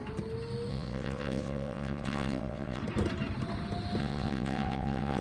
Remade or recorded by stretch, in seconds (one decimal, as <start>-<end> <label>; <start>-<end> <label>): 0.0-0.7 recorded; 0.7-2.8 remade; 2.8-4.0 recorded; 4.0-5.2 remade